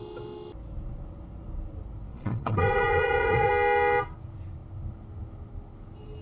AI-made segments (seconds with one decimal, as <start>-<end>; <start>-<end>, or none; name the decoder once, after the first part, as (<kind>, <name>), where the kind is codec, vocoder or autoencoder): 2.1-3.5 (vocoder, Vocos)

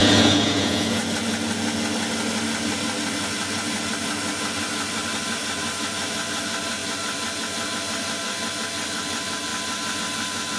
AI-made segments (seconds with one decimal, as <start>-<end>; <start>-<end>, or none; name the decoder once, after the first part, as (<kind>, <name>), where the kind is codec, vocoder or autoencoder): 0.0-1.0 (vocoder, Vocos)

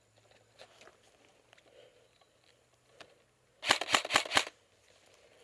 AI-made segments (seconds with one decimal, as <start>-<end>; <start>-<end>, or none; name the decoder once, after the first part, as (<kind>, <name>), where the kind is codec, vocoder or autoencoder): none

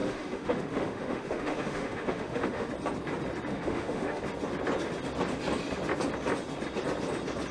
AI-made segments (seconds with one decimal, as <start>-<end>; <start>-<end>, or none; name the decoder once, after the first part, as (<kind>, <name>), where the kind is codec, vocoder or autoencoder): 0.0-2.7 (autoencoder, DAC-VAE); 3.5-4.2

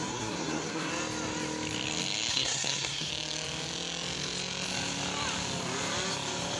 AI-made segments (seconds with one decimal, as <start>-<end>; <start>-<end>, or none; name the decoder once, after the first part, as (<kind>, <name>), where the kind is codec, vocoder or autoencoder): 0.0-0.9 (codec, SNAC); 2.3-3.1